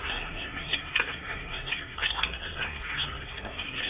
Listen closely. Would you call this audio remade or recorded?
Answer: remade